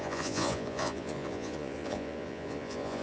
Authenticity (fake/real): fake